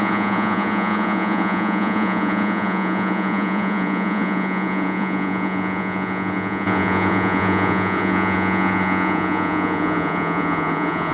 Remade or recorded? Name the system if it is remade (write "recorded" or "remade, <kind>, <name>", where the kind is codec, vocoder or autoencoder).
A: remade, vocoder, Vocos